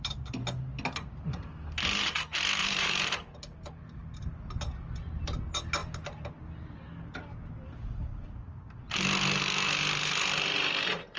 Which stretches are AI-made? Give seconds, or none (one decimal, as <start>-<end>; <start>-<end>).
2.6-3.7; 5.8-6.4